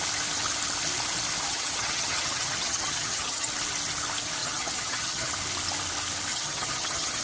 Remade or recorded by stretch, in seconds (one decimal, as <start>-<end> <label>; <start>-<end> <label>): 0.0-1.5 recorded; 1.5-3.5 remade; 3.5-4.4 recorded; 4.4-5.3 remade; 5.3-6.3 recorded; 6.3-7.2 remade